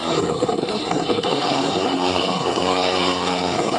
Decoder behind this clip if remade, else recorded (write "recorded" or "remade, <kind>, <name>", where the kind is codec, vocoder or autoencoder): remade, codec, SNAC